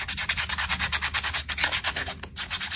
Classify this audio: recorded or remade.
recorded